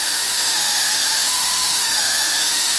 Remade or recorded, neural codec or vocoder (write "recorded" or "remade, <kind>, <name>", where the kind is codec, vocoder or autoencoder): remade, autoencoder, DAC-VAE